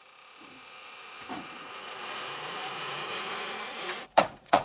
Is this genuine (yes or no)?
no